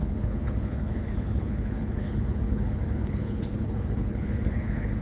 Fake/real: fake